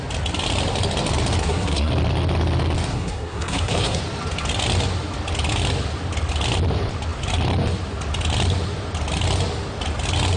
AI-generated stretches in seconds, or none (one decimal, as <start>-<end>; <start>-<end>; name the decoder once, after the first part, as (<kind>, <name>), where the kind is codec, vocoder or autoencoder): 1.4-1.9 (codec, SNAC); 2.9-4.0